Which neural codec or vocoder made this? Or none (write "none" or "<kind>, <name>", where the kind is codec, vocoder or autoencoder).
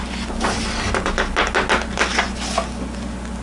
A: none